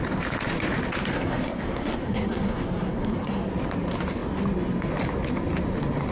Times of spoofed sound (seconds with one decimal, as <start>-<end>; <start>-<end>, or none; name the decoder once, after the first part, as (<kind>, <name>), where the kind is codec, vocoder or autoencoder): 1.1-3.5 (codec, SNAC)

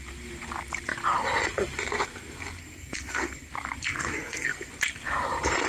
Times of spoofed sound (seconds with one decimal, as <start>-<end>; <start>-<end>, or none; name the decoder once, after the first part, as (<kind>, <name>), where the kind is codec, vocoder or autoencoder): 2.6-3.5 (codec, SNAC); 3.9-4.7

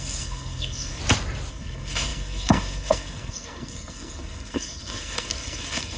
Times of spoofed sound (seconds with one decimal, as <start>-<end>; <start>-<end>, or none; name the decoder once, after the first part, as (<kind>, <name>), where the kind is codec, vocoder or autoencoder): 0.0-1.0 (codec, SNAC); 1.5-6.0

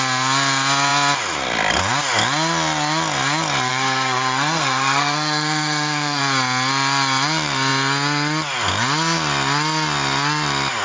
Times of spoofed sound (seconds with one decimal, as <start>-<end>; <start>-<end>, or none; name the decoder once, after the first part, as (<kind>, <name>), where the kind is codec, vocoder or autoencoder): 3.7-6.2 (codec, SNAC)

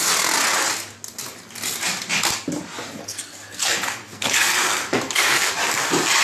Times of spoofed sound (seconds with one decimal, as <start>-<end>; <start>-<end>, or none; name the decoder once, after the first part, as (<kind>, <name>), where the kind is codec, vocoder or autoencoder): 3.0-5.5 (codec, SNAC)

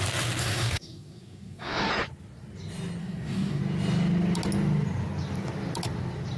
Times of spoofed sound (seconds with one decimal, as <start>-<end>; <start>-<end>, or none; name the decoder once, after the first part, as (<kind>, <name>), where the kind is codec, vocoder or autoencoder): 0.4-1.9 (codec, SNAC); 3.0-3.6

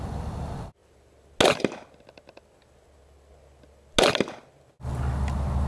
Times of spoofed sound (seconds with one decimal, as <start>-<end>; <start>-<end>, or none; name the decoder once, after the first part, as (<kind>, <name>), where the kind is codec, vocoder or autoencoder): none

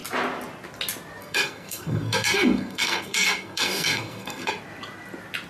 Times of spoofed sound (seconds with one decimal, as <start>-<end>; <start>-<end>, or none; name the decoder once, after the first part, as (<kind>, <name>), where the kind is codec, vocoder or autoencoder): 1.2-4.5 (codec, SNAC)